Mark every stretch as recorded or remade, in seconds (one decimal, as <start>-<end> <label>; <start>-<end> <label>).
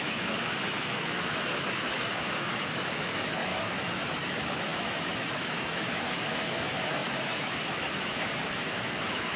0.0-9.4 remade